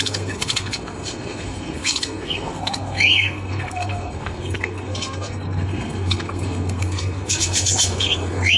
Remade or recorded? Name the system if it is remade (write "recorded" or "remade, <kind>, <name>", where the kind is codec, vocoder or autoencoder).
remade, codec, SNAC